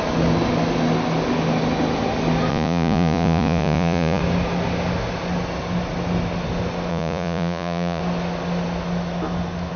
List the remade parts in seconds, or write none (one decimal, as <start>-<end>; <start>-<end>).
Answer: 2.5-4.2; 6.9-8.0